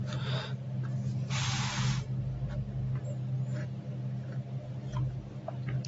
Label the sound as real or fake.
real